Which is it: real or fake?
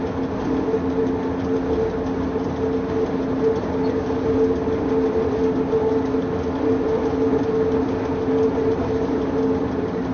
real